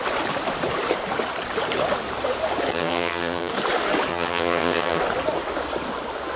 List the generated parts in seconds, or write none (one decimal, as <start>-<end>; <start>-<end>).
2.7-3.5; 4.1-5.0